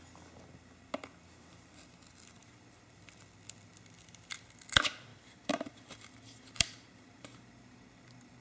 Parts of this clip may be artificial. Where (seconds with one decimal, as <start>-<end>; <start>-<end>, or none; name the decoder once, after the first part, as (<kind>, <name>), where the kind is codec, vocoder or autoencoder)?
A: 5.1-7.5 (vocoder, BigVGAN v2)